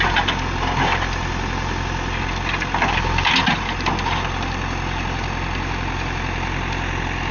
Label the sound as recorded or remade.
recorded